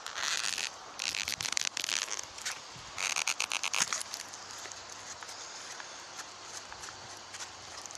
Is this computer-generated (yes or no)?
no